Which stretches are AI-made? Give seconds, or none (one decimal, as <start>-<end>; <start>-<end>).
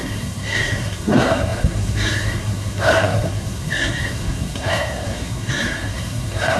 0.0-6.6